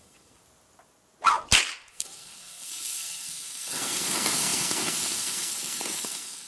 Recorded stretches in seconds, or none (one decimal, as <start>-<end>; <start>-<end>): 0.4-1.9